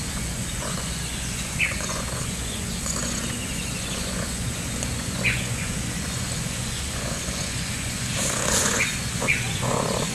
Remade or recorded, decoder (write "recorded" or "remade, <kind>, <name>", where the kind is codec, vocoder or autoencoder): remade, vocoder, Vocos